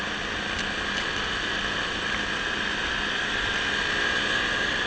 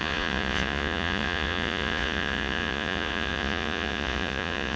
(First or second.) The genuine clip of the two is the first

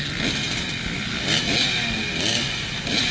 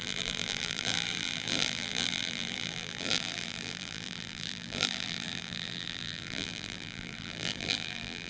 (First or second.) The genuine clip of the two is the first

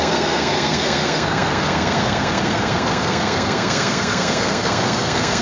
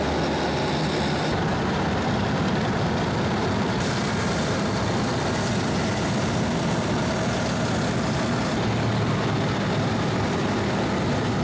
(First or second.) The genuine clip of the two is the second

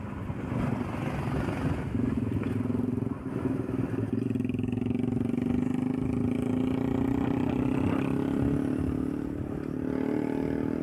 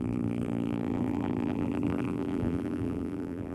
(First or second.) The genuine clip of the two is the first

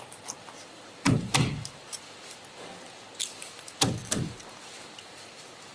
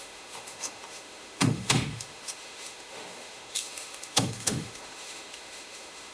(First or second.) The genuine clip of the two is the first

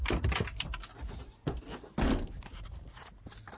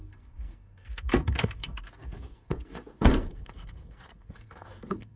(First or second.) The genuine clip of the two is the first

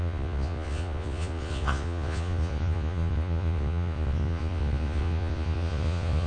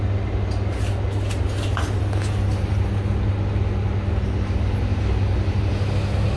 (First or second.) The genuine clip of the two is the second